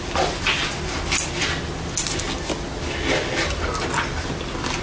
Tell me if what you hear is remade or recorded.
recorded